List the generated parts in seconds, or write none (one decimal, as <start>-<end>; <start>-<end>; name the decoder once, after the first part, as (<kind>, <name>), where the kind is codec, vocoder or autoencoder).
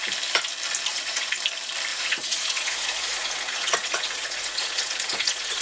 0.9-1.4 (vocoder, Vocos); 1.9-5.6